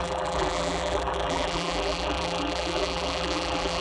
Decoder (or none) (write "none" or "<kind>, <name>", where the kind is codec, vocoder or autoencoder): vocoder, BigVGAN v2